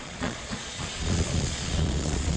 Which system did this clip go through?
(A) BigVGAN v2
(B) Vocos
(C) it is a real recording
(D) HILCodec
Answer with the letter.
B